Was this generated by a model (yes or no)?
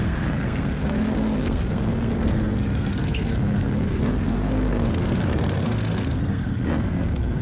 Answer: yes